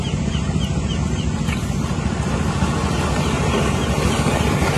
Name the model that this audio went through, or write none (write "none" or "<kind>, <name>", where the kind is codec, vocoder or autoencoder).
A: none